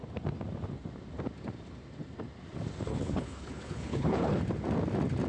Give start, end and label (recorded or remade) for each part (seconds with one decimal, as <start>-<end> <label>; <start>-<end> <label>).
0.0-2.9 recorded; 2.9-4.4 remade; 4.4-5.3 recorded